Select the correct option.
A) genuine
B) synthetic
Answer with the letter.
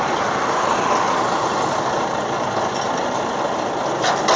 A